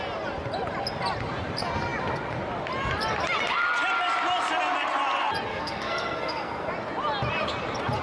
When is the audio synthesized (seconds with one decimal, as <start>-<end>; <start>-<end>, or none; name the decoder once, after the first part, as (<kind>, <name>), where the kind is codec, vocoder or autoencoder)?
5.5-6.7 (codec, SNAC)